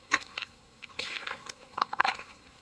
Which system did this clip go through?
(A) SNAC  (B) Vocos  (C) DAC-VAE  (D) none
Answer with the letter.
A